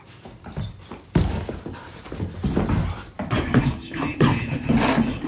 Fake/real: real